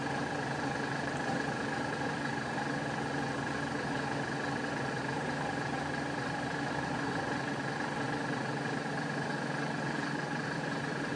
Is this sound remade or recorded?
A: remade